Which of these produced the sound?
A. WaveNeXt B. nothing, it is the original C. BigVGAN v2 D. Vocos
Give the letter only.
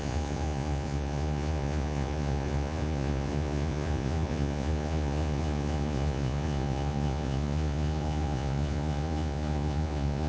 D